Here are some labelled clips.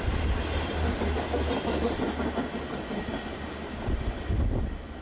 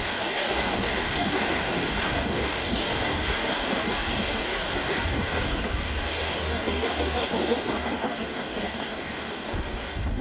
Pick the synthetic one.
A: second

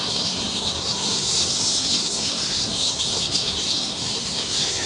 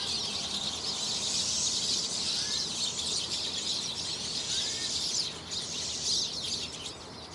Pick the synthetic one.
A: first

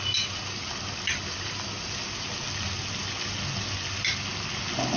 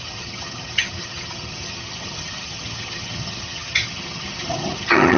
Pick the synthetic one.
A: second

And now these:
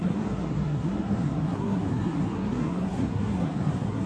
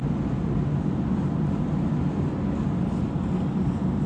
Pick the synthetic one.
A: first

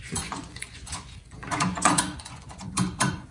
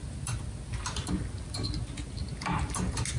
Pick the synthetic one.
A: first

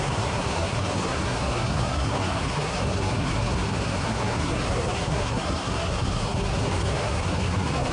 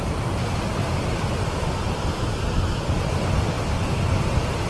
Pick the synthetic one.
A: first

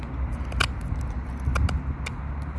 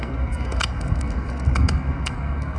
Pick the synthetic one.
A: second